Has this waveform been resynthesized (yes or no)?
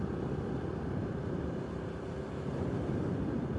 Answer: no